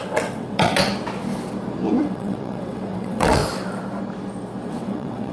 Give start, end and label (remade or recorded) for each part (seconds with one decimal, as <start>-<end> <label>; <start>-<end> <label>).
0.0-0.9 remade; 0.9-2.0 recorded; 2.0-3.4 remade; 3.4-4.7 recorded; 4.7-5.3 remade